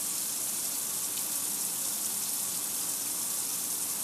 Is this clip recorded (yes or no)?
yes